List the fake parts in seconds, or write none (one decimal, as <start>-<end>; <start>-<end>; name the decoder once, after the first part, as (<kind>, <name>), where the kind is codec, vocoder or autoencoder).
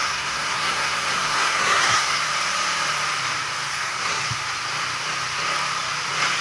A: 0.0-2.2 (codec, SNAC); 3.7-4.3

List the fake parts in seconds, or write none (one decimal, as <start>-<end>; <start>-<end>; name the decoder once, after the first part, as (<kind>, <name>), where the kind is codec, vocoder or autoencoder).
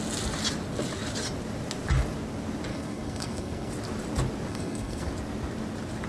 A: 2.7-3.7 (codec, SNAC); 4.5-5.1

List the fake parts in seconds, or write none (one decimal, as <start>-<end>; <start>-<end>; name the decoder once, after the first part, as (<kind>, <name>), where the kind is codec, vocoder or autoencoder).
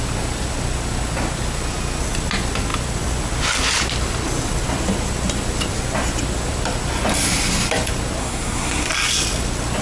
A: 8.2-8.9 (codec, SNAC)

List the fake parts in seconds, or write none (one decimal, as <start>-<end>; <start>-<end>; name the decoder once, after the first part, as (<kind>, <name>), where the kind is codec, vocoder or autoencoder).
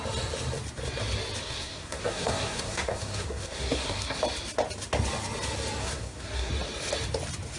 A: 1.4-4.2 (codec, SNAC); 5.8-6.5